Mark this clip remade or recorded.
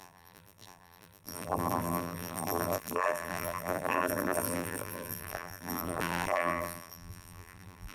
remade